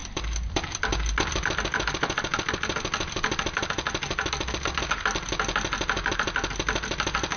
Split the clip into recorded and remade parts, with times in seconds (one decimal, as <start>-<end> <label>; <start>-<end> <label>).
0.0-7.4 recorded